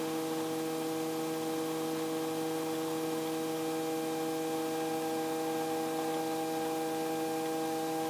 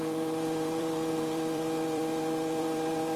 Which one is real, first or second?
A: first